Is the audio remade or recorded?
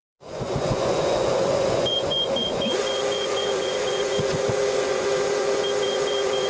remade